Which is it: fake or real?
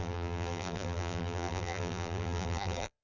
fake